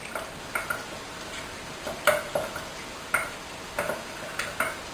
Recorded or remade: recorded